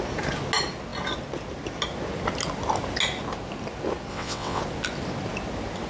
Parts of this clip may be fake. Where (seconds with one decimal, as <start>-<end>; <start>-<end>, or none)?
4.1-4.6